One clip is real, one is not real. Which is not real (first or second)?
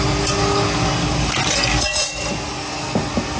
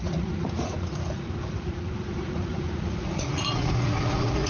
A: second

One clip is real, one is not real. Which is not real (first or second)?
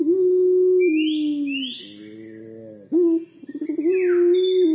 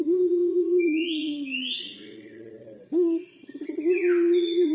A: second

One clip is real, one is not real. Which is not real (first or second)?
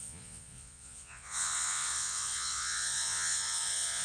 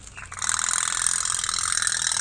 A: first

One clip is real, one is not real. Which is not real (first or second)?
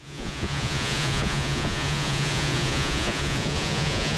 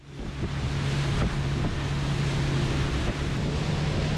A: first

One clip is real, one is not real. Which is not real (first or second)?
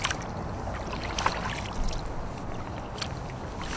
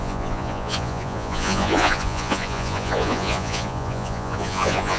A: second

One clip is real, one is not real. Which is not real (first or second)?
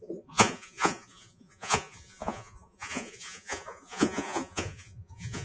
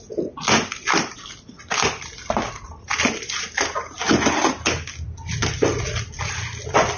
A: first